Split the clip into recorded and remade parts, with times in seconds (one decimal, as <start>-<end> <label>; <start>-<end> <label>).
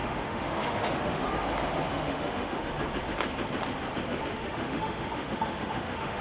0.0-1.3 remade; 1.3-1.9 recorded; 1.9-2.7 remade; 2.7-4.3 recorded; 4.3-6.2 remade